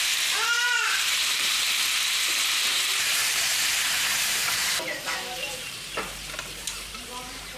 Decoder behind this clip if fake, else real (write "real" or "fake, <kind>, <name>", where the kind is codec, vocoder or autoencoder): fake, vocoder, BigVGAN v2